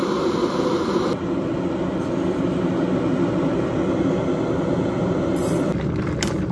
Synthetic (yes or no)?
no